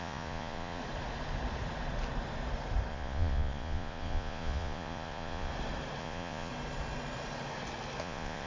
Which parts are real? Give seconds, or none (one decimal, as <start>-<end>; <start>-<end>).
0.8-2.9; 5.5-6.0; 6.5-8.0